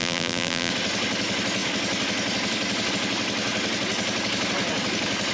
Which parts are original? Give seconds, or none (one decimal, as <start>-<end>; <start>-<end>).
0.7-5.3